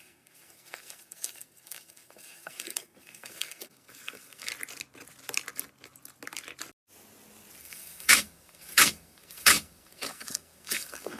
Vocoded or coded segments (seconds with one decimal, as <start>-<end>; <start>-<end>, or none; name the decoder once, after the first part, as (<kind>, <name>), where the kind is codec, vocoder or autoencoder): 0.0-4.5 (codec, SNAC); 7.6-11.2